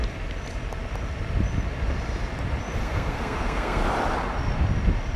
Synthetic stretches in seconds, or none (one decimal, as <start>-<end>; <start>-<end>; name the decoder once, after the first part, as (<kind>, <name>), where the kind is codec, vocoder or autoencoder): 2.8-3.8 (codec, SNAC)